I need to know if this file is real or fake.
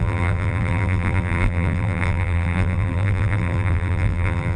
fake